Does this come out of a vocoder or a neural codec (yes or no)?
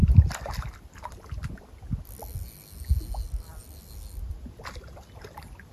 no